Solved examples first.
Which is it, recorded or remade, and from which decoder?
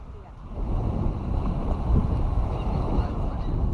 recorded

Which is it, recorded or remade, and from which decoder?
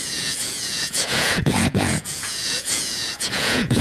remade, vocoder, Vocos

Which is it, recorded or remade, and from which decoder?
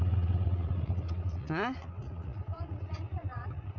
remade, vocoder, Vocos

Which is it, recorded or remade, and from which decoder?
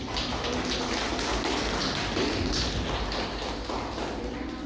recorded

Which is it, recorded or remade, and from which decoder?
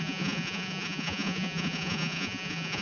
remade, vocoder, Vocos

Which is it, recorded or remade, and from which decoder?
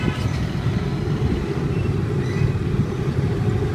recorded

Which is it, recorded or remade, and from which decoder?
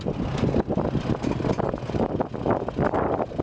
recorded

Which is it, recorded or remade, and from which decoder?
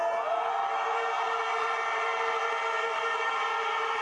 recorded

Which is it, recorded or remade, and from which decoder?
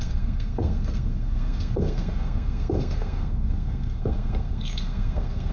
remade, codec, SNAC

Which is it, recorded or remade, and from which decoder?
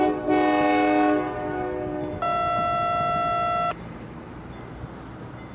recorded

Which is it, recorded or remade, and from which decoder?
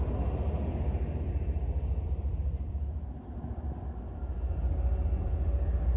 remade, vocoder, BigVGAN v2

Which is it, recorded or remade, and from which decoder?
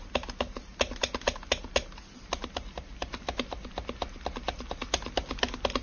recorded